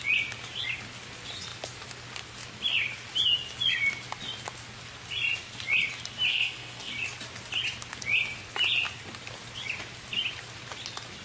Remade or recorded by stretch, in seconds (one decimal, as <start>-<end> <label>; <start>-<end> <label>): 0.0-6.3 recorded; 6.3-6.9 remade; 6.9-11.2 recorded